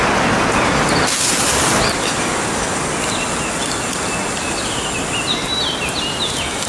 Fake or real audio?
real